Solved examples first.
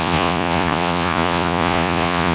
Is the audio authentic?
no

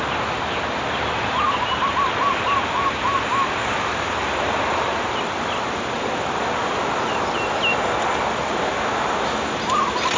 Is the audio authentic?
yes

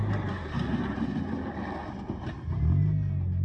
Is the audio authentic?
yes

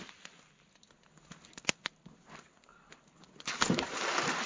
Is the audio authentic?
yes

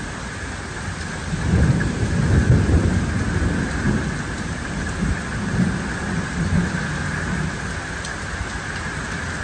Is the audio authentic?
yes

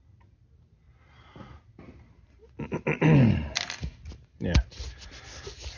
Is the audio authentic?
yes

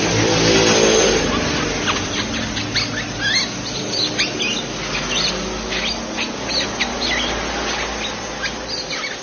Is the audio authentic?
yes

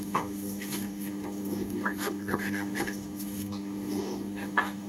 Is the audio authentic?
no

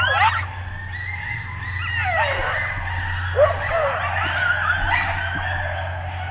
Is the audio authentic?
yes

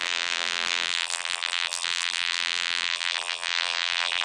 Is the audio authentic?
no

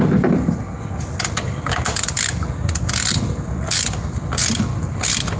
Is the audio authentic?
yes